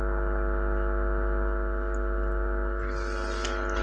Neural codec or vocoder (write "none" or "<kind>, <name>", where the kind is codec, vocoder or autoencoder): none